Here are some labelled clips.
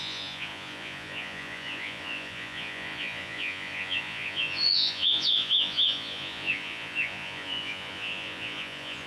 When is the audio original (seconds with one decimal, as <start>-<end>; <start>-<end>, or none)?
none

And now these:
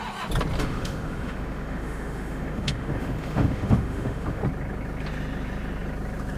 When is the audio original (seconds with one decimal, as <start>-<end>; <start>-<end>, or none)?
0.0-0.6; 4.4-6.4

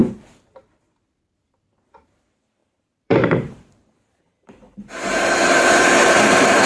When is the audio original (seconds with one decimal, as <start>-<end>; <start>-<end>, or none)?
0.9-2.6

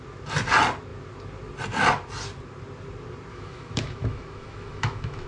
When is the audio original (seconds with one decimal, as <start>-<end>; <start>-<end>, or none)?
0.0-3.3